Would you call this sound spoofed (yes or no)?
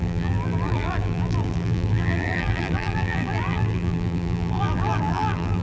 yes